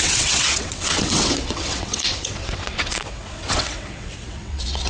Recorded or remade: remade